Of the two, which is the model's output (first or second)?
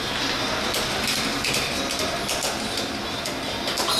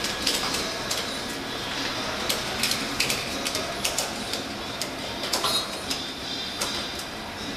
second